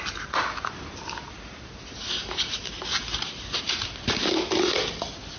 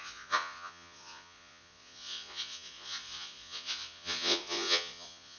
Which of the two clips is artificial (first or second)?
second